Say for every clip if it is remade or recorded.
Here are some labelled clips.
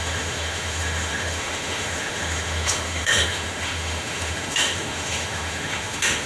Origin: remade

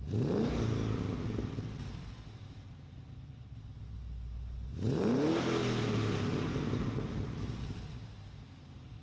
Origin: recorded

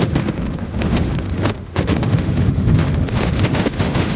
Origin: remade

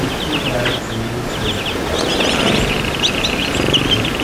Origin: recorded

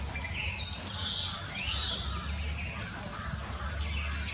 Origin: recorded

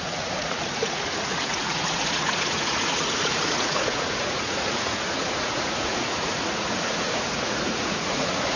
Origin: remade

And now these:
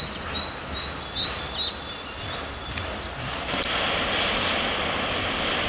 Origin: recorded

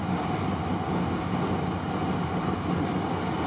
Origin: recorded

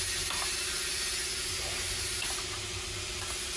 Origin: recorded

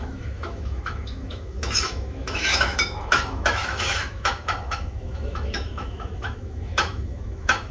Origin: remade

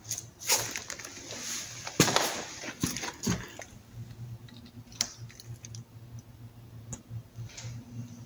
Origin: recorded